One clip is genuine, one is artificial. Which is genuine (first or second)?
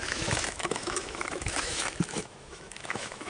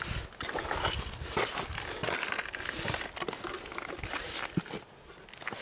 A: second